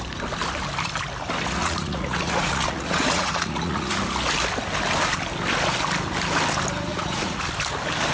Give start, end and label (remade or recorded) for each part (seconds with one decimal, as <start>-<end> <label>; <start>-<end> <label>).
0.0-1.6 recorded; 1.6-3.9 remade; 3.9-6.9 recorded; 6.9-7.4 remade; 7.4-8.1 recorded